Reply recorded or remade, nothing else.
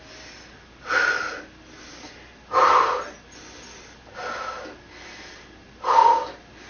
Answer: recorded